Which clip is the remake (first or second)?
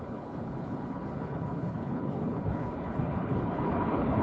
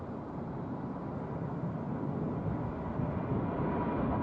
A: first